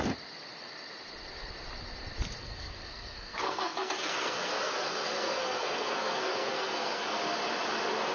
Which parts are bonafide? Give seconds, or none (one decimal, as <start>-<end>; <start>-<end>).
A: 0.0-2.4; 7.2-8.1